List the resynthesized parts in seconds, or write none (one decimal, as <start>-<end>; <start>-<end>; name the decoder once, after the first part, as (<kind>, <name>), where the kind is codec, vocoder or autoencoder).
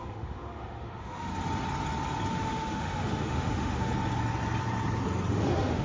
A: 0.0-1.3 (autoencoder, DAC-VAE); 2.3-3.9; 5.3-5.8